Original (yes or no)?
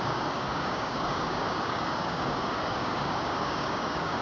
no